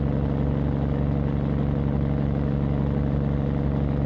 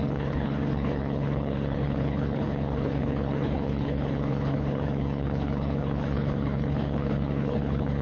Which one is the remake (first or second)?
second